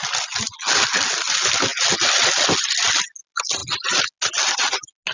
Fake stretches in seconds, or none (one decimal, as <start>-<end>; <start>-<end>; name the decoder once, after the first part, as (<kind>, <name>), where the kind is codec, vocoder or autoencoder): none